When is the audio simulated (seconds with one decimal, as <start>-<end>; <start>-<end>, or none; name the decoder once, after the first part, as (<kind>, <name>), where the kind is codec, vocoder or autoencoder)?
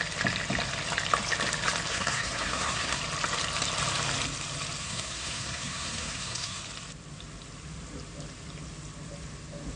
1.9-3.0 (codec, SNAC); 4.8-6.6